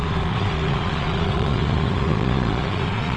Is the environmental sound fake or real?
fake